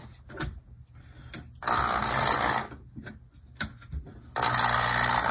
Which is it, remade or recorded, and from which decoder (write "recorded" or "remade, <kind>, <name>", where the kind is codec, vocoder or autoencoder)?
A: recorded